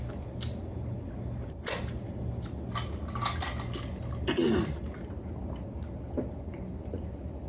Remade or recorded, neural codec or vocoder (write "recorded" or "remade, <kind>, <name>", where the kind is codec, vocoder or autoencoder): recorded